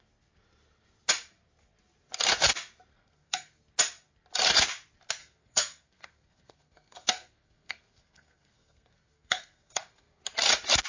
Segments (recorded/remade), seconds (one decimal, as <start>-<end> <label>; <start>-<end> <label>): 0.0-2.9 recorded; 2.9-3.6 remade; 3.6-5.2 recorded; 5.2-10.2 remade; 10.2-10.9 recorded